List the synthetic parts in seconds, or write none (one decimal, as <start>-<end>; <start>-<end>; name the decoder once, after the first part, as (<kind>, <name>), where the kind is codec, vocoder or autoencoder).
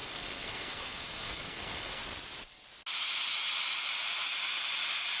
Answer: 0.0-2.0 (codec, SNAC)